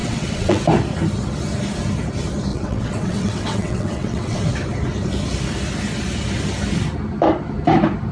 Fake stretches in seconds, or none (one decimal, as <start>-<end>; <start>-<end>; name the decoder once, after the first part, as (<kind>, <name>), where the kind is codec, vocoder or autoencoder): 0.0-0.6 (vocoder, WaveNeXt); 2.5-4.4